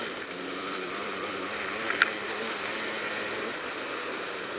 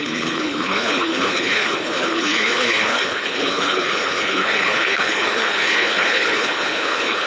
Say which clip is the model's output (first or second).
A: second